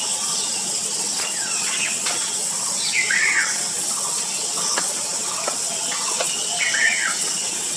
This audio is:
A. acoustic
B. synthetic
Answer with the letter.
B